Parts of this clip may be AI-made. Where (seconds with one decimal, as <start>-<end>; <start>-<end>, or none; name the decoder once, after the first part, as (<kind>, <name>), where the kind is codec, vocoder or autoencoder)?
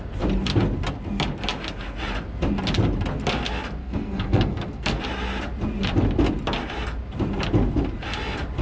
3.8-5.0 (codec, SNAC)